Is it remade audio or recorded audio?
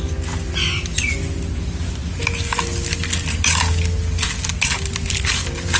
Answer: recorded